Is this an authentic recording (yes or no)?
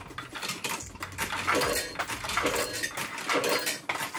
yes